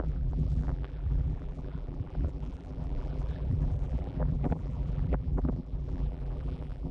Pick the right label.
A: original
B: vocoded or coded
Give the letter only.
B